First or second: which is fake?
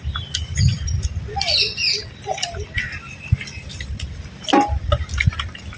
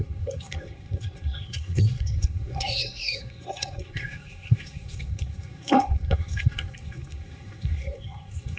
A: second